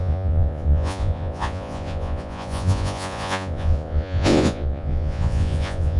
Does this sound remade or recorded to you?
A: remade